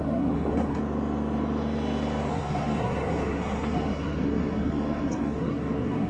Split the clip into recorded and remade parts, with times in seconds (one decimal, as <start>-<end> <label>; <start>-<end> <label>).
0.0-0.8 remade; 0.8-2.3 recorded; 2.3-6.1 remade